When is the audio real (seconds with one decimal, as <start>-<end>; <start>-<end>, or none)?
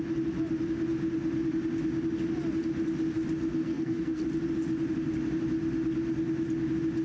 0.0-3.5; 4.2-7.0